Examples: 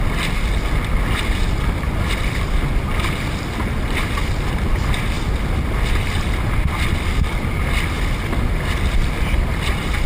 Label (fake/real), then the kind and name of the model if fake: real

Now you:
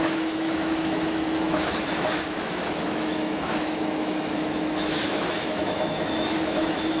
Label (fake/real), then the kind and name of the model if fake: fake, autoencoder, DAC-VAE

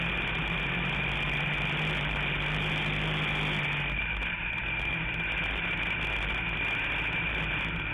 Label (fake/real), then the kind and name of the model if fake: real